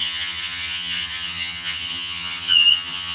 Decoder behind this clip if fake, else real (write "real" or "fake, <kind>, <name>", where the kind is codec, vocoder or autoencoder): fake, vocoder, HiFi-GAN